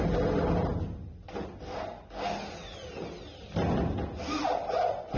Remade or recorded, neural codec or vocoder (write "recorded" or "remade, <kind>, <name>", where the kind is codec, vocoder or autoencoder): recorded